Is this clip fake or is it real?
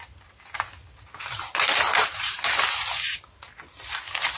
real